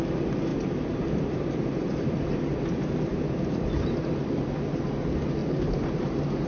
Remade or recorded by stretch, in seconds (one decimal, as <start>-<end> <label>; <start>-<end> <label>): 0.0-0.5 recorded; 0.5-4.4 remade; 4.4-5.4 recorded; 5.4-6.1 remade; 6.1-6.5 recorded